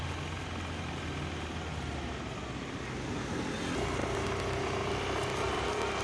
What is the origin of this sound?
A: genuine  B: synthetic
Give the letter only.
A